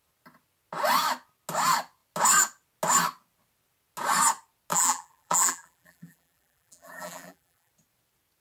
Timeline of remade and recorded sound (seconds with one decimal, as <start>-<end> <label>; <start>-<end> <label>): 0.0-4.7 recorded; 4.7-7.7 remade; 7.7-8.4 recorded